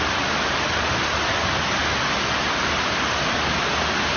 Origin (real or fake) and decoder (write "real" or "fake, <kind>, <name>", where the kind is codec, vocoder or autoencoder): real